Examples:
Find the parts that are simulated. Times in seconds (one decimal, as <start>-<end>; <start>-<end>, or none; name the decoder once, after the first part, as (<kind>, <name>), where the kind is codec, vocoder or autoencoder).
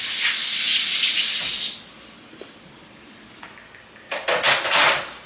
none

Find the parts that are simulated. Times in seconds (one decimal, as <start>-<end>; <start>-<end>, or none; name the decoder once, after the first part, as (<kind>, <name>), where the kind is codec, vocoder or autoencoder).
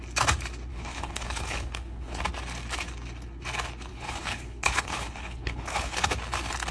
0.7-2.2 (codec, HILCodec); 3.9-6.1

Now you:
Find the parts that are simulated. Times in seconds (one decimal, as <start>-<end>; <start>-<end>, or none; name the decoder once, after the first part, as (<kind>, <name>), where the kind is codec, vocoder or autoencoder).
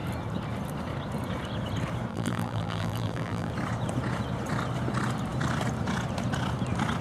2.1-3.5 (vocoder, BigVGAN v2)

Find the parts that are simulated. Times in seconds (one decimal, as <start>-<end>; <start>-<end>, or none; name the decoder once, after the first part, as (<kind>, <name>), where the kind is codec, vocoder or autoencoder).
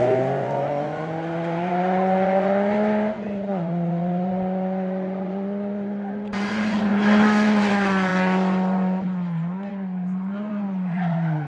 0.0-11.5 (vocoder, Vocos)